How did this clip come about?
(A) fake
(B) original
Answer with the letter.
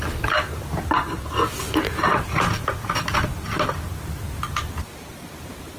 B